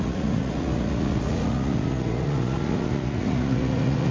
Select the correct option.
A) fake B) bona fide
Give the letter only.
A